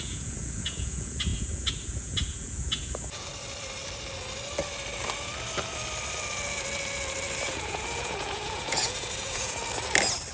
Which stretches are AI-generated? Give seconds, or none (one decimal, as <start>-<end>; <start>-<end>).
0.0-3.3; 7.5-9.6